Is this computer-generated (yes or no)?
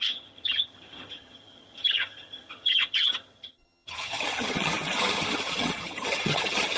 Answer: yes